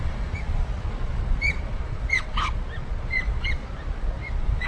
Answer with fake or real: fake